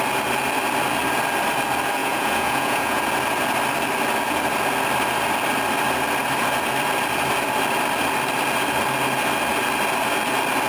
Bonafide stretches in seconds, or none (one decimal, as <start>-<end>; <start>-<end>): 0.0-2.0; 3.0-10.7